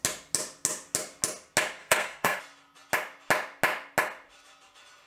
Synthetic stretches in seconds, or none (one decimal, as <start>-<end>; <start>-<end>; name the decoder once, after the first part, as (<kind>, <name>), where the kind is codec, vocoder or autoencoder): 1.8-2.4 (codec, SNAC)